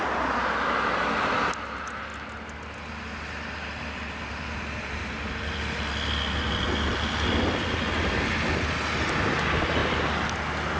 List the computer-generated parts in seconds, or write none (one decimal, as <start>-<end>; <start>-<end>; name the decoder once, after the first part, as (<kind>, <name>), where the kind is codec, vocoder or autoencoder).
none